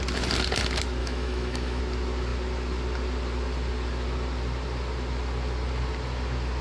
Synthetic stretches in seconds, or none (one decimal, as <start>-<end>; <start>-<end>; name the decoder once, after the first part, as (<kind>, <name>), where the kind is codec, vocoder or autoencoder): 1.0-1.8 (autoencoder, DAC-VAE)